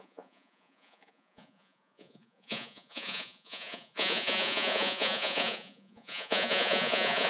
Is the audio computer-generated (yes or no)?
yes